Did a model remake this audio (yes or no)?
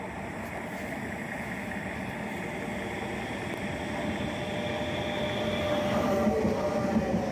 no